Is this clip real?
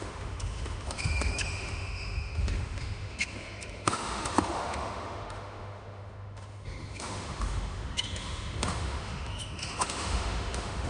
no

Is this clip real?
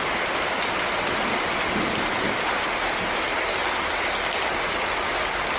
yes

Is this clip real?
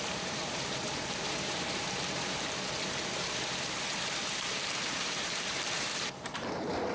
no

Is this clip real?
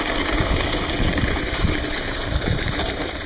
no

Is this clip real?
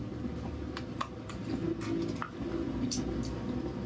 yes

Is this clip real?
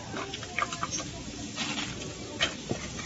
yes